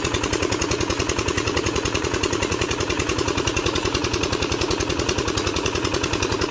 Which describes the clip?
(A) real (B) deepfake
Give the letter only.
B